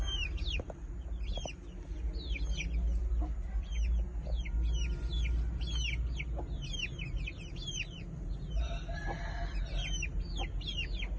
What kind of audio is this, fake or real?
real